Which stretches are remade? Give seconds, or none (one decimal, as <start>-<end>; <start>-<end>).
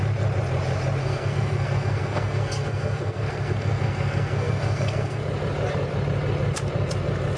1.0-5.2